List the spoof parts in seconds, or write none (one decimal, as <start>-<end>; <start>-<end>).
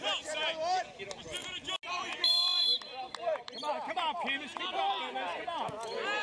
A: none